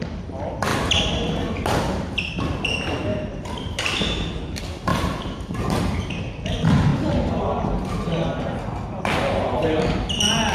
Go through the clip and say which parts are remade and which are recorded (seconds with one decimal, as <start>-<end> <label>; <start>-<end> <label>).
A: 0.0-0.7 recorded; 0.7-2.3 remade; 2.3-3.1 recorded; 3.1-4.3 remade; 4.3-4.9 recorded; 4.9-6.2 remade; 6.2-10.5 recorded